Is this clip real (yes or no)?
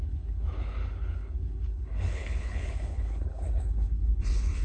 no